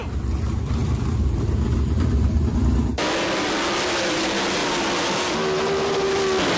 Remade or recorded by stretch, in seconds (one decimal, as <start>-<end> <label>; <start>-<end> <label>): 0.0-6.6 recorded